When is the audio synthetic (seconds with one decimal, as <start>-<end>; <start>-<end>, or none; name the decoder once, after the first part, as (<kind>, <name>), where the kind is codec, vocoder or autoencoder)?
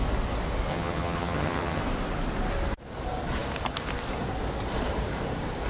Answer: 0.7-1.8 (vocoder, HiFi-GAN)